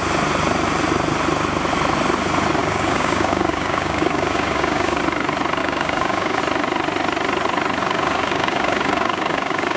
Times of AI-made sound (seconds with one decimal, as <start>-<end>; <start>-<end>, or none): 2.6-5.0; 5.6-6.4; 7.8-9.8